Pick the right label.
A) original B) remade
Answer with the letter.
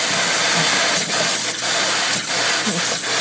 A